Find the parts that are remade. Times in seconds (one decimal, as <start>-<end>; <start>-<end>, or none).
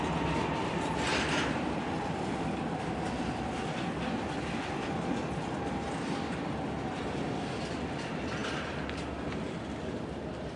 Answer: none